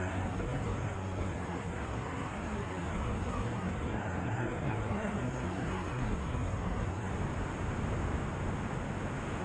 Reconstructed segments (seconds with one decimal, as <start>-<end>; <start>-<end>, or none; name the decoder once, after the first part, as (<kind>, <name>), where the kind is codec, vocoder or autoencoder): 0.0-7.1 (codec, SNAC)